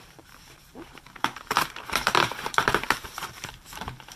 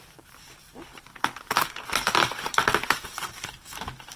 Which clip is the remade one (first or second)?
first